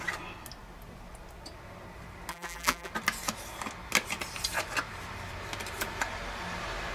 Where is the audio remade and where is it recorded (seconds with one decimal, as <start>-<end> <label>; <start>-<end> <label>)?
0.0-2.3 recorded; 2.3-2.9 remade; 2.9-6.9 recorded

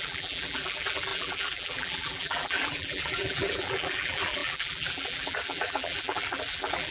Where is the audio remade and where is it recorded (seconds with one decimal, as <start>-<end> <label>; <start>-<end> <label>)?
0.0-6.9 remade

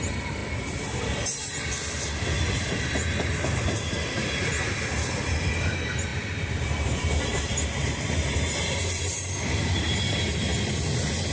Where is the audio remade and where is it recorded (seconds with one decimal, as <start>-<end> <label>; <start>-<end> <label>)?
0.0-0.4 remade; 0.4-2.5 recorded; 2.5-10.5 remade; 10.5-11.3 recorded

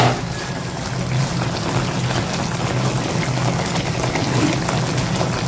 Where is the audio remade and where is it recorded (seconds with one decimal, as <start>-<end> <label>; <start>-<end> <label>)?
0.0-5.5 recorded